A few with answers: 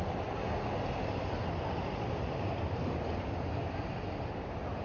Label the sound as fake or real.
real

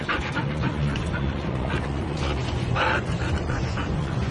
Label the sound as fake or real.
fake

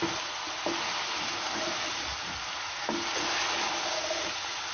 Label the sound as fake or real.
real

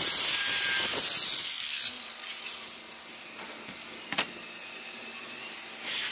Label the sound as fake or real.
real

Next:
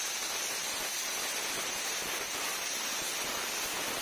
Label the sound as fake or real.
real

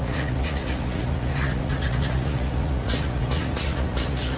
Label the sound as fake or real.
fake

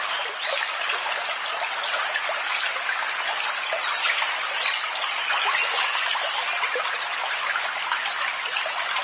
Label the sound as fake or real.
real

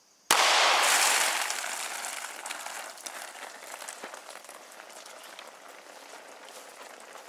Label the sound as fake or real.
real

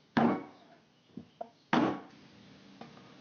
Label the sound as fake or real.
real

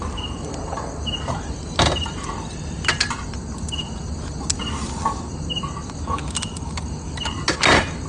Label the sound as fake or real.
real